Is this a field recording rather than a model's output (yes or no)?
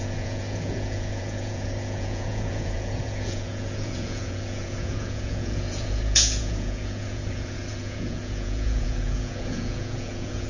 no